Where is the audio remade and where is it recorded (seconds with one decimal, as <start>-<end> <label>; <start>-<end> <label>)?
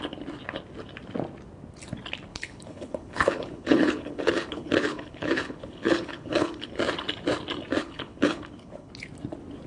0.0-2.3 recorded; 2.3-6.7 remade; 6.7-7.8 recorded; 7.8-8.9 remade; 8.9-9.7 recorded